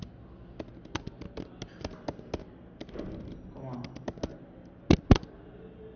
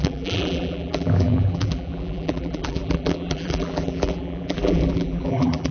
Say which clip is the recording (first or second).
first